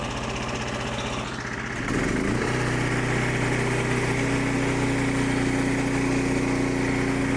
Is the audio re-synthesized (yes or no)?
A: no